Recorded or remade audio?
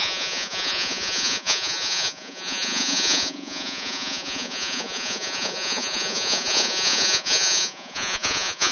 remade